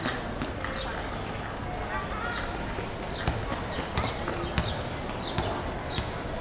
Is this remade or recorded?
recorded